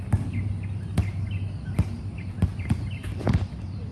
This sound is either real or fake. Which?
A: real